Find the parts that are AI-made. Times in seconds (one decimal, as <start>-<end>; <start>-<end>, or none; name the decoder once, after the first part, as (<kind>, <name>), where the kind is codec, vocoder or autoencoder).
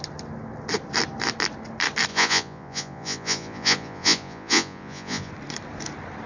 2.1-5.3 (vocoder, Vocos)